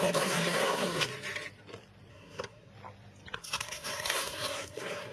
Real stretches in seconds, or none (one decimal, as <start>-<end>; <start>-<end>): 1.1-2.1; 2.7-3.4